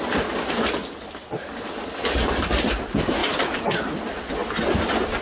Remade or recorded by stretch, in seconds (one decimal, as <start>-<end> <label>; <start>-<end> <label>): 0.0-0.8 remade; 0.8-2.5 recorded; 2.5-4.4 remade; 4.4-5.2 recorded